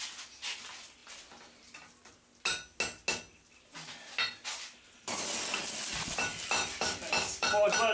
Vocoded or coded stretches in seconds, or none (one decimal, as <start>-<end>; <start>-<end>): 6.3-7.5